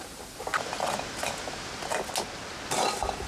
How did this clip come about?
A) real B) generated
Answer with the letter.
A